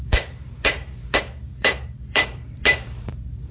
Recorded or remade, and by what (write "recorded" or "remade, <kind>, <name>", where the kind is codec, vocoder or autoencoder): remade, vocoder, BigVGAN v2